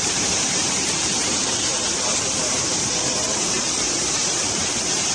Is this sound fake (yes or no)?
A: yes